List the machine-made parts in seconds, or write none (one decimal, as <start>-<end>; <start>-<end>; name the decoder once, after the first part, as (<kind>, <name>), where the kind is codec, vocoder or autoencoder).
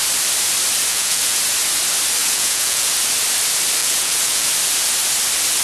0.9-1.4 (vocoder, Vocos); 2.2-2.9; 3.8-4.5